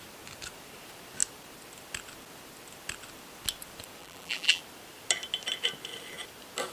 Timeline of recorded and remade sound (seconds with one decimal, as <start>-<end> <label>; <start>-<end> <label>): 0.0-4.0 recorded; 4.0-4.6 remade; 4.6-6.7 recorded